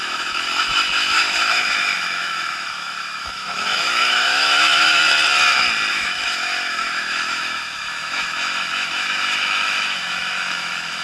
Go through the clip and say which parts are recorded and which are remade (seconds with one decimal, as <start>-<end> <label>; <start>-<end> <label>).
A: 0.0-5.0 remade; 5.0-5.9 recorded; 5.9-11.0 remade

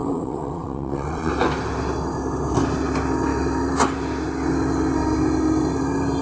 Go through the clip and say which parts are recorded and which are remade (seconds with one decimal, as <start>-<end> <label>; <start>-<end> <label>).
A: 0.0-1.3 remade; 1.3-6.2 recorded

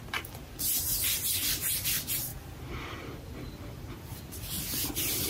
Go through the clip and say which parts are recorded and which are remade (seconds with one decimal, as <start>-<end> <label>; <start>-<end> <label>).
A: 0.0-2.3 remade; 2.3-2.8 recorded; 2.8-5.3 remade